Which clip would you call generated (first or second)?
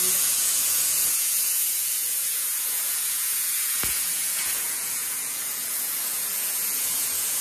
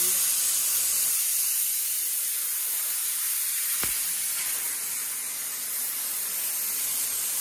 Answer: first